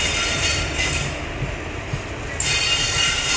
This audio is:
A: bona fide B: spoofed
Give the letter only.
A